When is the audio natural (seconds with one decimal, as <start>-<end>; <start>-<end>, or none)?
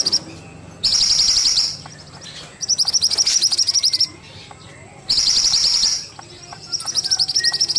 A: 0.0-7.8